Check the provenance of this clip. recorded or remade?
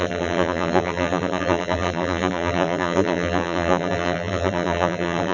remade